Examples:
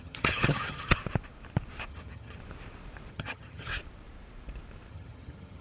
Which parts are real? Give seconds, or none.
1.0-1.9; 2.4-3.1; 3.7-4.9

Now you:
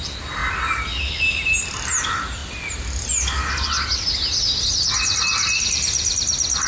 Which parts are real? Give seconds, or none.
0.0-6.7

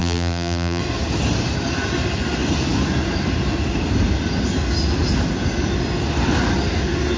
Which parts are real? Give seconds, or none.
0.8-7.2

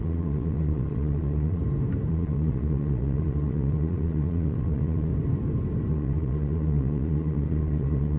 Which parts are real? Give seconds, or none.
1.6-2.1; 5.1-5.9

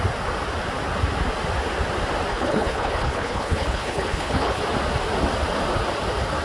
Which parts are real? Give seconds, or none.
0.0-2.3; 4.6-6.4

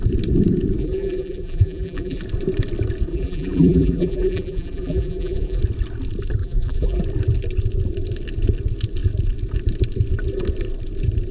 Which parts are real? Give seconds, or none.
0.0-0.8; 2.2-3.1; 5.6-6.4; 7.0-11.3

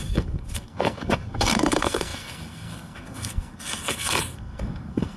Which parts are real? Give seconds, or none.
none